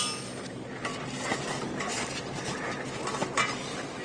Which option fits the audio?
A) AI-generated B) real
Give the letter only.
B